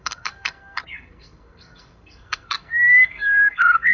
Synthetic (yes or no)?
yes